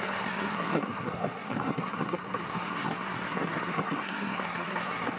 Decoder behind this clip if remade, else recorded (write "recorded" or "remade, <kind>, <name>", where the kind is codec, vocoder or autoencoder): remade, codec, SNAC